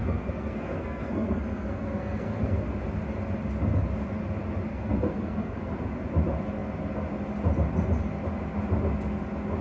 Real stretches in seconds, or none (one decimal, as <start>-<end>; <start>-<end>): 2.8-4.7; 5.8-9.6